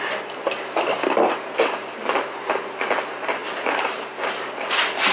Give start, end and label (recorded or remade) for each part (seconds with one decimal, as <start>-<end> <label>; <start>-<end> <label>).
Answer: 0.0-1.8 recorded; 1.8-2.5 remade; 2.5-3.4 recorded; 3.4-4.2 remade; 4.2-5.1 recorded